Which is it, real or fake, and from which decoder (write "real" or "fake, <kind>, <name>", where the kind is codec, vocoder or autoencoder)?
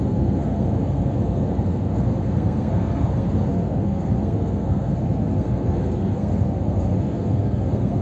fake, codec, SNAC